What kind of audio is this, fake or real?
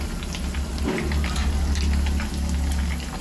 real